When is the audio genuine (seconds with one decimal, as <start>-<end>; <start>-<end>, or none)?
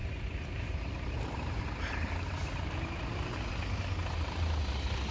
0.0-5.1